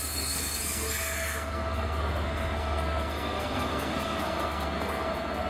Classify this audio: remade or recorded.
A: remade